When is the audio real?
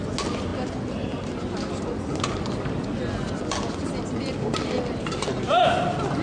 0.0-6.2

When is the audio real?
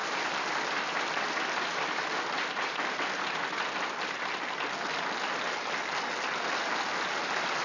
2.2-7.6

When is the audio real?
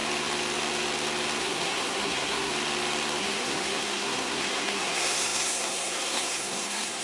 0.0-1.4; 2.5-3.2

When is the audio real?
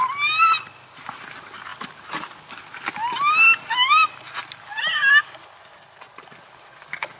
0.0-7.2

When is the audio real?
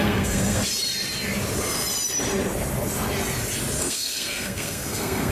0.6-3.8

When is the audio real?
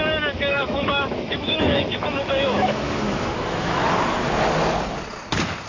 0.0-0.5; 3.9-5.7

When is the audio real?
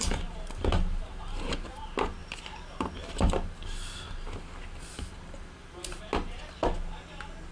0.0-7.5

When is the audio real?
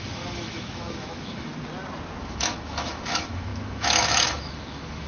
1.5-2.2